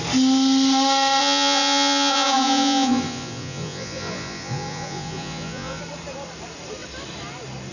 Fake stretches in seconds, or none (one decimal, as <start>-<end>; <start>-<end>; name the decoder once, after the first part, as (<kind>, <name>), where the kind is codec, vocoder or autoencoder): 1.2-5.8 (vocoder, Vocos)